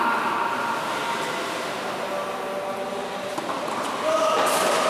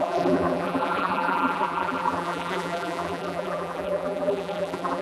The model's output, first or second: second